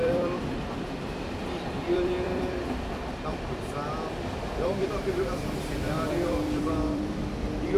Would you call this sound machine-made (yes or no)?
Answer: yes